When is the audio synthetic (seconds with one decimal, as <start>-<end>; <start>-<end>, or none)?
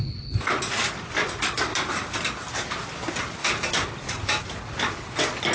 none